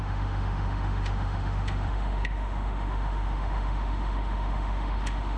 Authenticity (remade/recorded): remade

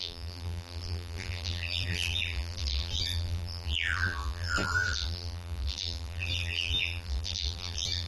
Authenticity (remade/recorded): remade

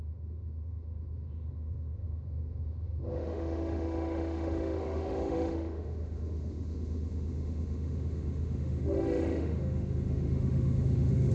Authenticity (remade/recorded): remade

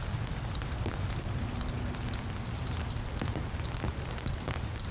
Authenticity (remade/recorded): remade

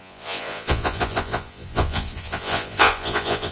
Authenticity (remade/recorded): remade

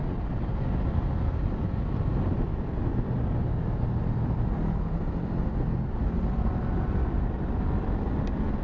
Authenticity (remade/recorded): recorded